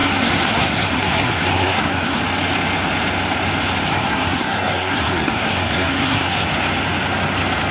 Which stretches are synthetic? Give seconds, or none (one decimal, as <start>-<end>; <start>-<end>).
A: 0.0-2.2; 3.9-6.5